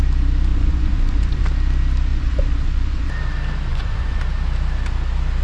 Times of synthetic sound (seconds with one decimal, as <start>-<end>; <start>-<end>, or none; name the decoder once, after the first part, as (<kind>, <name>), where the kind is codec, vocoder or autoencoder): 0.5-1.4 (vocoder, Vocos); 2.1-3.1; 3.7-4.2